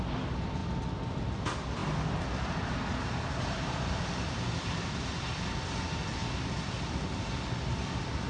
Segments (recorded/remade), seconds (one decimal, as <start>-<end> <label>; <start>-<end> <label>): 0.0-0.6 remade; 0.6-1.2 recorded; 1.2-1.8 remade; 1.8-4.3 recorded; 4.3-6.2 remade; 6.2-6.7 recorded; 6.7-8.3 remade